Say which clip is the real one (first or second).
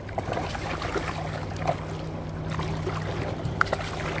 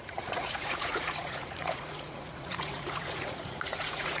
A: first